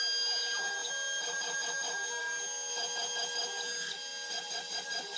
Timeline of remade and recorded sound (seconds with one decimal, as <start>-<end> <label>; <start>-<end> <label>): 0.0-5.2 recorded